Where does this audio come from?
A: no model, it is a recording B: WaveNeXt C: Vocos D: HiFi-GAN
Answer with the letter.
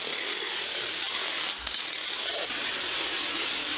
A